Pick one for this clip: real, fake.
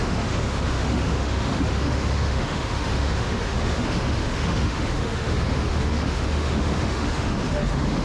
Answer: fake